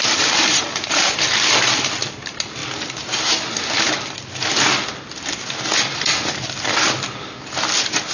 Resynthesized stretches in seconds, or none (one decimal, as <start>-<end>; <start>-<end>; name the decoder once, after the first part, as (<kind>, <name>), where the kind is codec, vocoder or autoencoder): none